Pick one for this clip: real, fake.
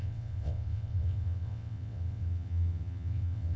fake